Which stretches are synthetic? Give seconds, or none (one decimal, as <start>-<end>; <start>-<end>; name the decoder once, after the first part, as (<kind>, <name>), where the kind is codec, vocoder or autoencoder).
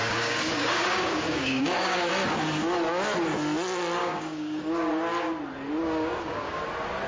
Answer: 0.0-2.1 (codec, DAC); 4.0-5.0; 5.8-6.6